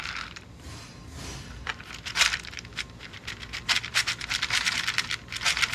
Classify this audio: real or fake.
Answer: fake